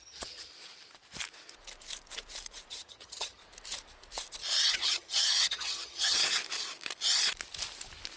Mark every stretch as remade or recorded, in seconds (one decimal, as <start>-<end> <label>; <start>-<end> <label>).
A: 0.0-0.5 remade; 0.5-2.7 recorded; 2.7-3.4 remade; 3.4-4.7 recorded; 4.7-6.2 remade; 6.2-8.2 recorded